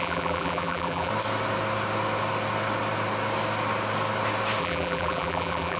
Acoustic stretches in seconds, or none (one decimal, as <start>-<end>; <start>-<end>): 1.1-4.6